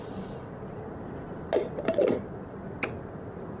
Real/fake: real